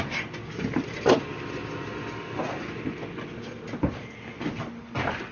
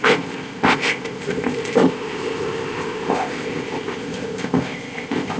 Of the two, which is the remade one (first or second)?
second